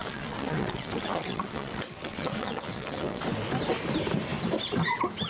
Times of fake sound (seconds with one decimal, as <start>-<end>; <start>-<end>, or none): 0.0-3.2